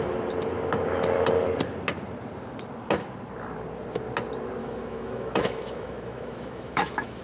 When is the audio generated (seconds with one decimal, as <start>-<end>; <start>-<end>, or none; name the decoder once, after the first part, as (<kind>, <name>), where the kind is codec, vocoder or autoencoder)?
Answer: 4.6-7.2 (autoencoder, DAC-VAE)